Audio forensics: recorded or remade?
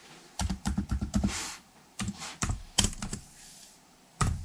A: remade